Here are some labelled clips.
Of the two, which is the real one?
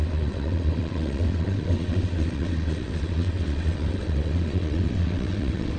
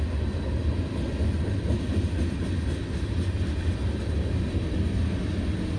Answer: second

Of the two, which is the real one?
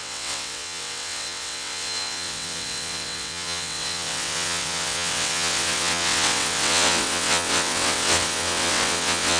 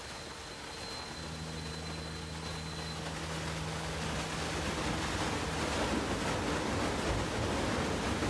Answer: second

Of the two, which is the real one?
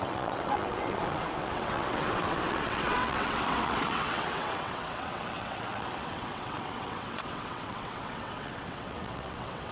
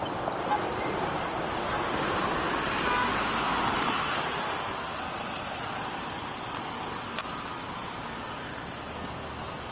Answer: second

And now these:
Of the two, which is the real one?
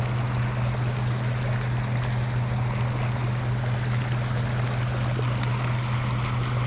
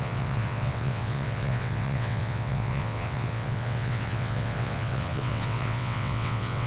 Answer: first